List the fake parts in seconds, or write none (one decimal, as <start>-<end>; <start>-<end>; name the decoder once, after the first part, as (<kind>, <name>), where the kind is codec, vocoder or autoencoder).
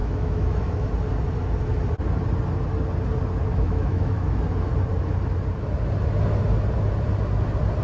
0.0-0.9 (autoencoder, DAC-VAE); 3.5-4.4